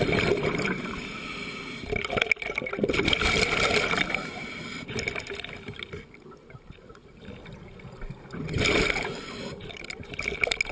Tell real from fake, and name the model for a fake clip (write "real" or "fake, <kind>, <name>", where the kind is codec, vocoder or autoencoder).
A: real